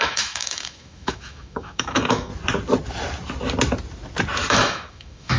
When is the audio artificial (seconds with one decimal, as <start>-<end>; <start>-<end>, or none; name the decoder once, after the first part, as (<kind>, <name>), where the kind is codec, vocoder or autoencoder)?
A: 0.0-2.3 (autoencoder, DAC-VAE); 4.5-5.4